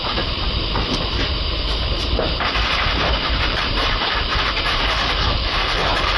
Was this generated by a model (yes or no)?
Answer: yes